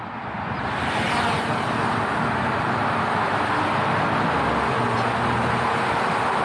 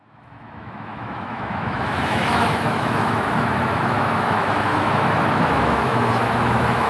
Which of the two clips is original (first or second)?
first